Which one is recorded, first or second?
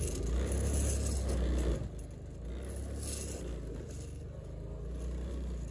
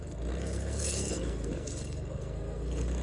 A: first